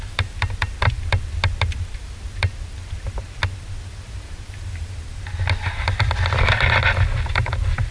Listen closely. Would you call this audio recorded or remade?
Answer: recorded